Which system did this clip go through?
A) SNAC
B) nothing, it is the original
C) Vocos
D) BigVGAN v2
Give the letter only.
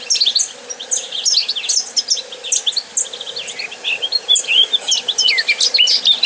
B